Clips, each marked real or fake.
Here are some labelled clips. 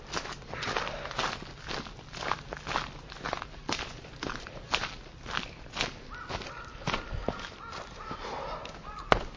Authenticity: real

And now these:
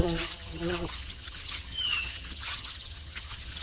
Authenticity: fake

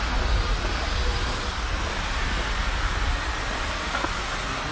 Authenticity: real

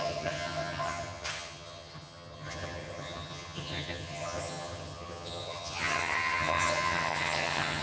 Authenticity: fake